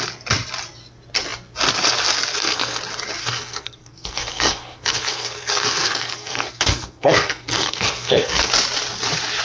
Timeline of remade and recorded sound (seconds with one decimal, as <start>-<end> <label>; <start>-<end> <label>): 0.0-2.3 recorded; 2.3-2.8 remade; 2.8-3.2 recorded; 3.2-8.5 remade; 8.5-9.4 recorded